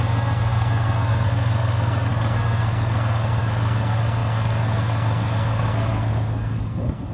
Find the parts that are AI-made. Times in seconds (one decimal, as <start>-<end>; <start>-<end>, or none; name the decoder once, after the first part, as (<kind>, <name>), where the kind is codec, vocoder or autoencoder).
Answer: 0.0-7.1 (codec, SNAC)